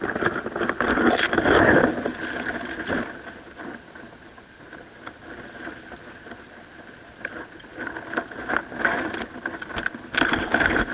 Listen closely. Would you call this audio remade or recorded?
recorded